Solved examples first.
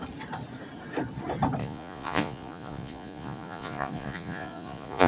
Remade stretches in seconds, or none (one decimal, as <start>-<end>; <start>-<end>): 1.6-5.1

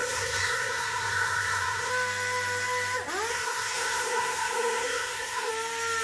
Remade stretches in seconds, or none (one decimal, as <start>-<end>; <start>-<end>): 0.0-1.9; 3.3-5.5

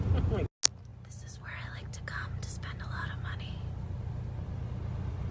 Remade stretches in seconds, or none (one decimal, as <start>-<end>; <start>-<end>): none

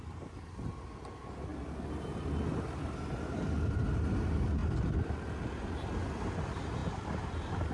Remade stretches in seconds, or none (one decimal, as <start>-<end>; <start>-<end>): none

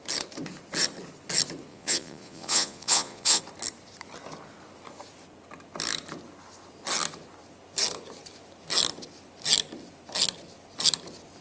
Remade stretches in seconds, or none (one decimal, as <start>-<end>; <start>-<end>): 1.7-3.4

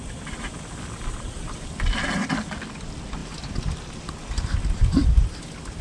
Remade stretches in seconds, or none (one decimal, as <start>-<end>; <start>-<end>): none

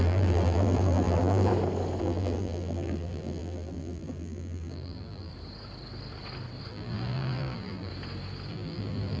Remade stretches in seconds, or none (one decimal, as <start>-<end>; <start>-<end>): 0.0-1.5; 2.0-5.3; 6.7-7.9; 8.5-9.2